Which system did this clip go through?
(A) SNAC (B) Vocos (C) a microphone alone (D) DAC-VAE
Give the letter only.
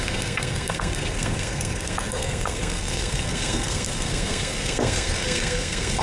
A